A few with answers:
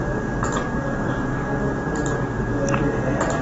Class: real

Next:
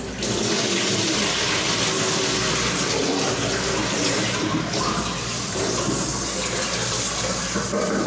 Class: real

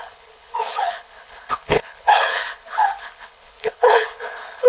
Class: fake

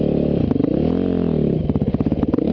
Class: real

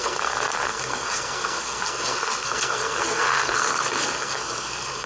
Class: fake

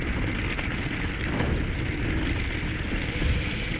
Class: real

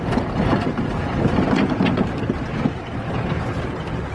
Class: real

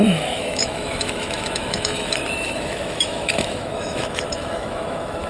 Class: fake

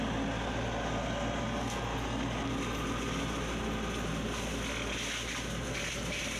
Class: real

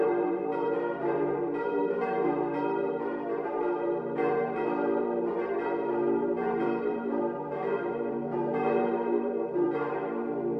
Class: fake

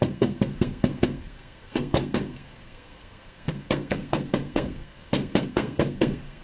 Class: fake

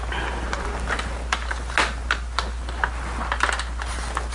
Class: real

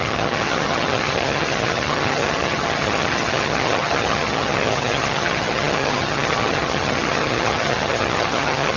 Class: fake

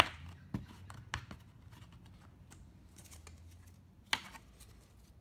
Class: real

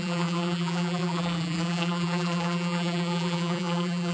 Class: fake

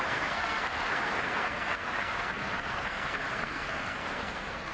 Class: fake